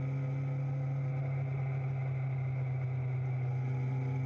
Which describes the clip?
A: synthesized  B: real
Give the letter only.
B